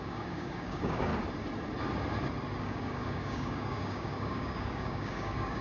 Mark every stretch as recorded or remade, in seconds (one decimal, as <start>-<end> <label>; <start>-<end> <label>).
0.0-1.1 remade; 1.1-2.6 recorded; 2.6-5.6 remade